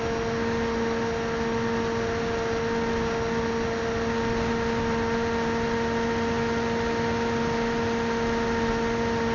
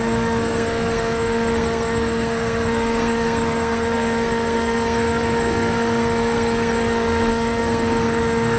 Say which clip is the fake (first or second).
second